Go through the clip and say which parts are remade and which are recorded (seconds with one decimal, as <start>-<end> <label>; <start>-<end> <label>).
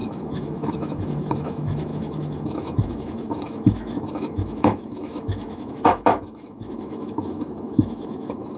0.0-8.6 remade